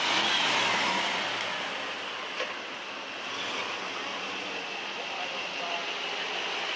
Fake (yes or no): no